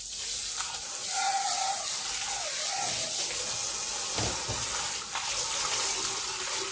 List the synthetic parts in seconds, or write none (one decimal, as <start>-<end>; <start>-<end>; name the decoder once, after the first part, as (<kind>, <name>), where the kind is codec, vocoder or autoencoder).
none